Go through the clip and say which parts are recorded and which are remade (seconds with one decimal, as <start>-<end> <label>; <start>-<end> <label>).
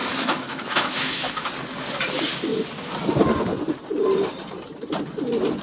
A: 0.0-1.5 remade; 1.5-5.6 recorded